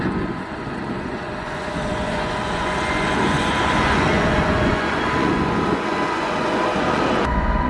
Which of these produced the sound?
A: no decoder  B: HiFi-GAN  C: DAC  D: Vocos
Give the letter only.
D